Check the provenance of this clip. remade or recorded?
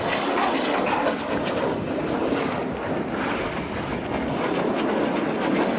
recorded